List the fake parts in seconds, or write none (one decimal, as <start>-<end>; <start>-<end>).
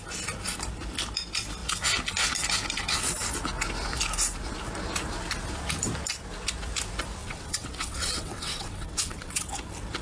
7.2-9.5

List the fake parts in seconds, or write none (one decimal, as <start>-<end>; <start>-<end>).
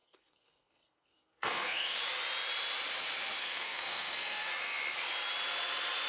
0.0-2.0; 3.4-4.5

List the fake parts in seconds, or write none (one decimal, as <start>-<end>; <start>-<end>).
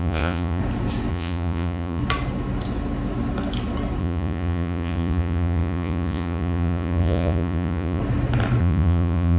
0.0-0.6; 1.1-2.0; 4.0-8.0; 8.6-9.4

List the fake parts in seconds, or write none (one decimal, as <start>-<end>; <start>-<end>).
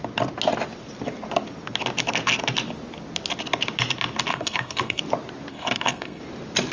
4.3-5.0; 5.5-6.2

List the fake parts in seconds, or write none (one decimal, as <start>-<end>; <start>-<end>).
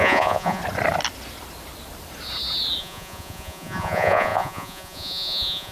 0.0-0.6; 2.8-5.7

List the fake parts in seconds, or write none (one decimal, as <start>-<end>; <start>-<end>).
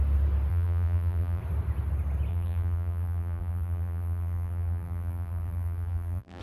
0.5-1.4; 2.3-6.4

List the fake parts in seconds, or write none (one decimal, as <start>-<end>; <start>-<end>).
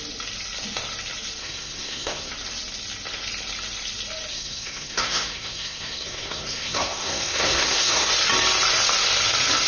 1.4-2.3; 4.3-8.1